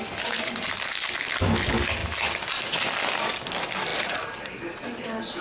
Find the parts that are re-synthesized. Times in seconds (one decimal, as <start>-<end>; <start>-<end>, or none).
none